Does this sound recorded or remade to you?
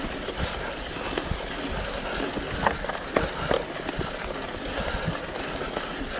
recorded